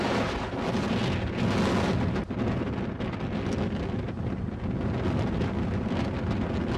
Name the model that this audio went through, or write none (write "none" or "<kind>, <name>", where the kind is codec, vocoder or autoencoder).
none